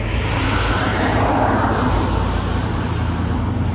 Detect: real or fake real